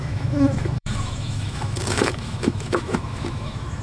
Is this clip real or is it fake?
fake